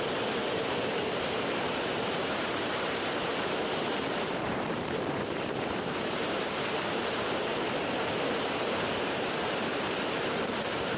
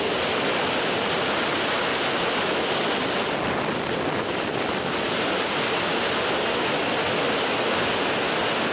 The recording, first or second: second